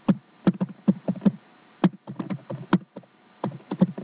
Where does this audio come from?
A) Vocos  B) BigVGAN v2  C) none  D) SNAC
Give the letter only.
C